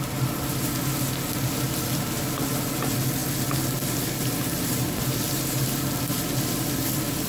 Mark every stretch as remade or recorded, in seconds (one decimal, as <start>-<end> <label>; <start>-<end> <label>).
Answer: 0.0-7.3 recorded